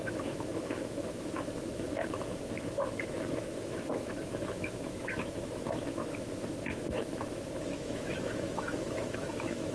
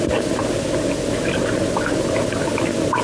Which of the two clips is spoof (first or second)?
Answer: first